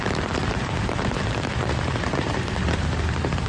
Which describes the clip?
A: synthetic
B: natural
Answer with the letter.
A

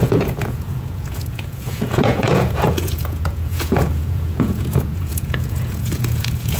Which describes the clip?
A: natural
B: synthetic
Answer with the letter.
B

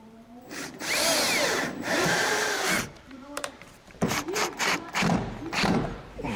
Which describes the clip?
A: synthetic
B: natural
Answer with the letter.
A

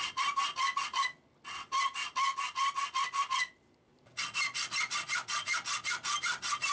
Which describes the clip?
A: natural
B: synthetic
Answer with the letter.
A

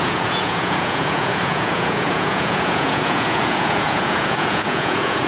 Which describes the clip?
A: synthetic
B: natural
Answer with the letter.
A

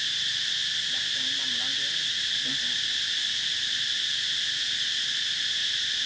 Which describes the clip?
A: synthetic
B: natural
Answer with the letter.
B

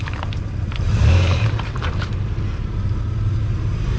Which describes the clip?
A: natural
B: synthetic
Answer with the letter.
B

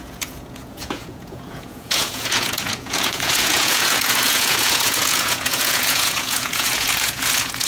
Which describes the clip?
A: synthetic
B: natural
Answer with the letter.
A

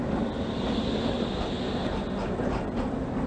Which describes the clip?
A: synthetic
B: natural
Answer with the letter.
B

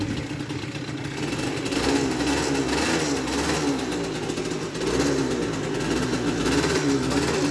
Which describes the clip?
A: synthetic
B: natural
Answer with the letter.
B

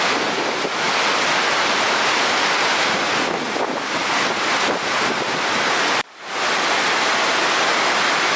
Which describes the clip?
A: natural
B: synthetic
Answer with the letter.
A